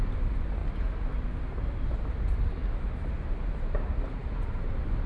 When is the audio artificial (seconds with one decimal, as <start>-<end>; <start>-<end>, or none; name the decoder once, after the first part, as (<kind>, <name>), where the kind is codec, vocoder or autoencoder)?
0.0-0.6 (vocoder, BigVGAN v2); 1.3-2.6; 3.8-5.1